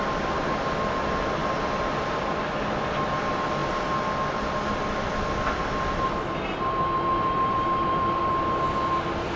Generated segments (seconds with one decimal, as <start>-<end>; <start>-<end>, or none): none